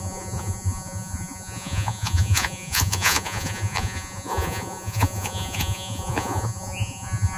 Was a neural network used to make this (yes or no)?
yes